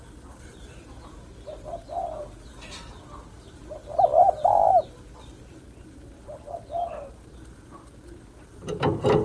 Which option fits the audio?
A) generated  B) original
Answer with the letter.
B